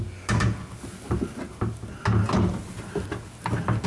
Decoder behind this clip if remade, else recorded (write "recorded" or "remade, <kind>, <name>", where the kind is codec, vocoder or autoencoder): recorded